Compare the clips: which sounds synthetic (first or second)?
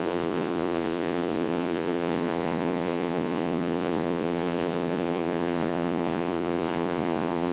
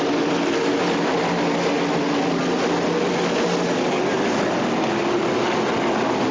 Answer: first